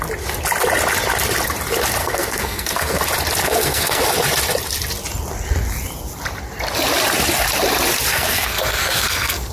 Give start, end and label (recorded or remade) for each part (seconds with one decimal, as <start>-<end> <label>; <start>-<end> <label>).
0.0-2.0 recorded; 2.0-3.0 remade; 3.0-3.4 recorded; 3.4-4.0 remade; 4.0-8.1 recorded; 8.1-9.5 remade